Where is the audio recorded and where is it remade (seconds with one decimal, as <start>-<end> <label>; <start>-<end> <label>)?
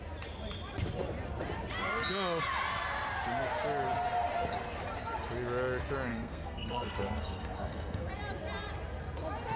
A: 0.0-6.1 recorded; 6.1-8.1 remade; 8.1-9.6 recorded